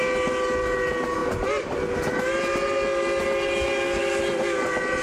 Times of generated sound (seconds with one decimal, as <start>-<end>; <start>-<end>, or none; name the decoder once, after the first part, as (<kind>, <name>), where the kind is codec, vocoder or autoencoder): none